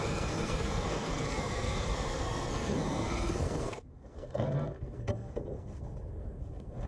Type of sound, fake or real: fake